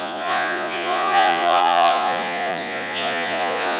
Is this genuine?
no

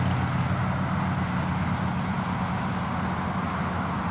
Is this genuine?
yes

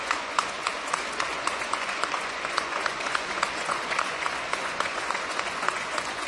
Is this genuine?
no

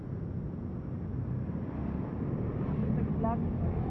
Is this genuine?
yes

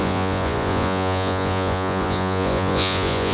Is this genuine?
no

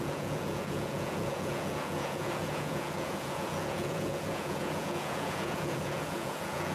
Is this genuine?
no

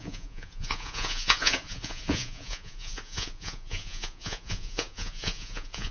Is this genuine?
no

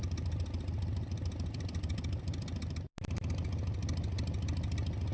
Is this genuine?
yes